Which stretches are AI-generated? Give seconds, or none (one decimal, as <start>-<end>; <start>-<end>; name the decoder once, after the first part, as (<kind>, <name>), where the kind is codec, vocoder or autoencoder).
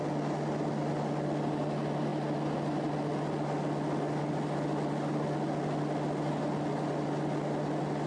none